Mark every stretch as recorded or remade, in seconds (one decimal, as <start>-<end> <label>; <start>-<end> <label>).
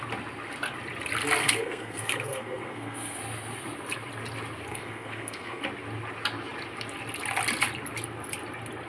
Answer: 0.0-1.4 recorded; 1.4-3.2 remade; 3.2-4.7 recorded; 4.7-5.6 remade; 5.6-8.9 recorded